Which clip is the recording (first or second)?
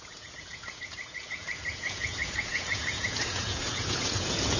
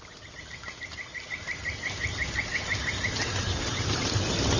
second